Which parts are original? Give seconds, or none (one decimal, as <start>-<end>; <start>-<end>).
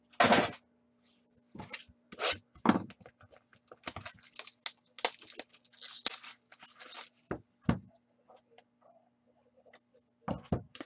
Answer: 0.0-10.9